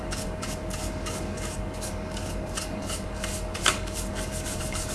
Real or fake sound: fake